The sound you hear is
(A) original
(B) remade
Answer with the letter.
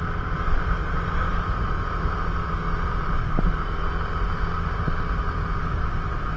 A